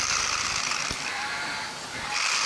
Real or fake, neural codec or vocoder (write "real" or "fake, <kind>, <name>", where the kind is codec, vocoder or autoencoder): fake, vocoder, BigVGAN v2